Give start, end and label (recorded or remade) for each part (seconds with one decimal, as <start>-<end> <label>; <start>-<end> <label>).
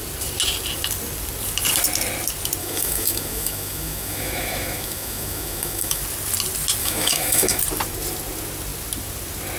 0.0-2.6 recorded; 2.6-6.0 remade; 6.0-6.8 recorded; 6.8-7.6 remade; 7.6-9.6 recorded